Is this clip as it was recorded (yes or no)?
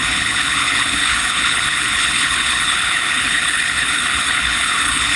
no